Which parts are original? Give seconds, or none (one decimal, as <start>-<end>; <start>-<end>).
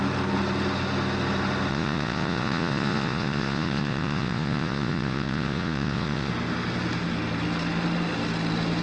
0.0-1.7; 6.3-8.8